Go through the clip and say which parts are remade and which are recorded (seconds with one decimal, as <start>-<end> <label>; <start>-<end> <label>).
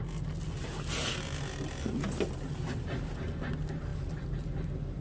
0.0-5.0 recorded